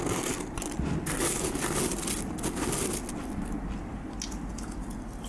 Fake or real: real